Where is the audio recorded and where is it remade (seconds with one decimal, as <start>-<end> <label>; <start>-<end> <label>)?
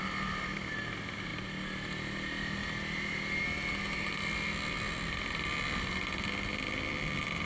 0.0-7.5 recorded